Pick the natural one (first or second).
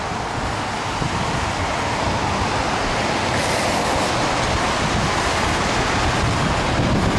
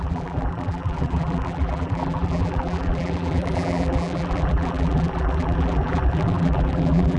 first